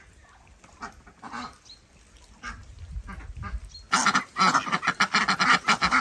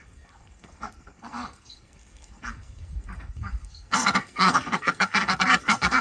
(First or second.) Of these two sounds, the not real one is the second